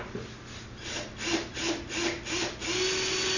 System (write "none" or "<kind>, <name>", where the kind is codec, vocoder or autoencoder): none